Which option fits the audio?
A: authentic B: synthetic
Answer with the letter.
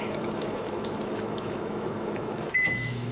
B